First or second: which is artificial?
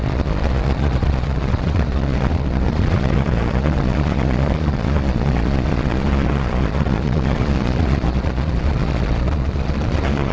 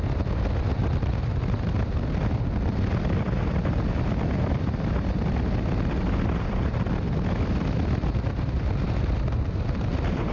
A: first